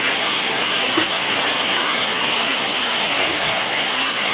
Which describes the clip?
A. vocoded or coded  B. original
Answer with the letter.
A